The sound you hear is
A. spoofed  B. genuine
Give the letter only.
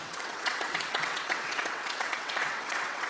A